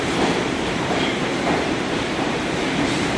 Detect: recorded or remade remade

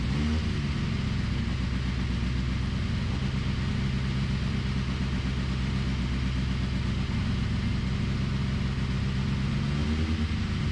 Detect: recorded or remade recorded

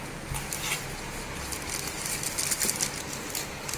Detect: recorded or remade recorded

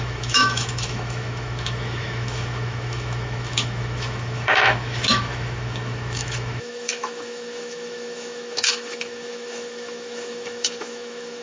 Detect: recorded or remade remade